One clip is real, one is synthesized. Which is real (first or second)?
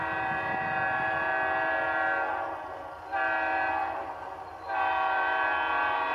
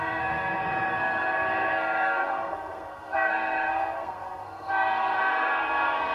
first